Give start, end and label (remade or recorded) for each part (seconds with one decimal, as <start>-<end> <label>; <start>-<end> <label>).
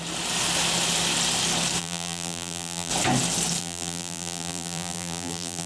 0.0-1.8 recorded; 1.8-2.9 remade; 2.9-3.6 recorded; 3.6-5.7 remade